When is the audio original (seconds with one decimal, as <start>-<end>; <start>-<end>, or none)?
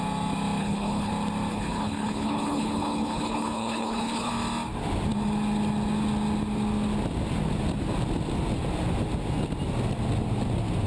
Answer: 0.0-0.6; 1.1-1.5; 4.3-10.9